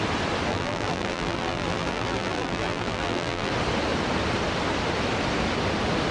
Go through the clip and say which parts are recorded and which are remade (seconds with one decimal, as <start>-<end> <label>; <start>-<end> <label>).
0.0-0.5 recorded; 0.5-3.5 remade; 3.5-6.1 recorded